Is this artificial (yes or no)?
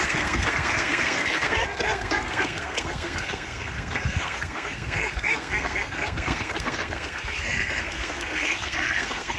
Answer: yes